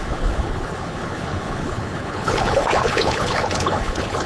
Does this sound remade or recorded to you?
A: remade